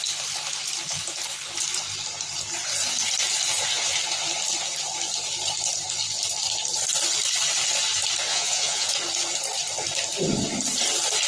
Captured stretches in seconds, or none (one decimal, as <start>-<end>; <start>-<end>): 0.0-8.3; 8.9-11.3